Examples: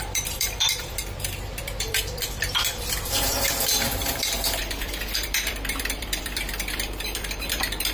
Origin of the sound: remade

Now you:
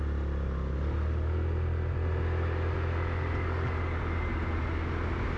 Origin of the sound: recorded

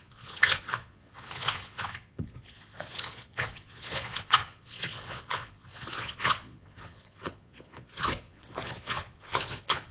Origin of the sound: remade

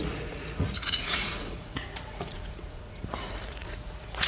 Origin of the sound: remade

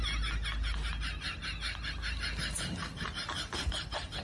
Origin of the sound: recorded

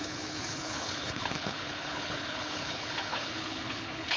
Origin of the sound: remade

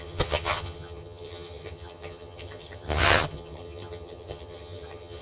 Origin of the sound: remade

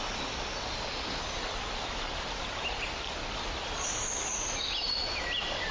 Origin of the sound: recorded